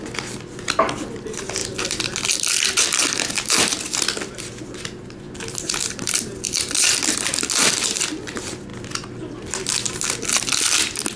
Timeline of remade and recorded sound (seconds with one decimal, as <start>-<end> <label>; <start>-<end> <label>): 0.0-11.2 recorded